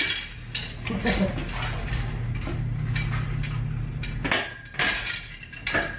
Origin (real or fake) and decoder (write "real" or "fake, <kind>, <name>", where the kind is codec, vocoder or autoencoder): real